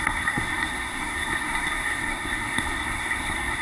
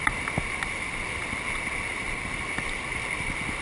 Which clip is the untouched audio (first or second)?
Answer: second